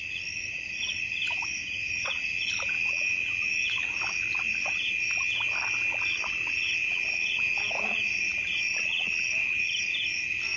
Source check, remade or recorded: recorded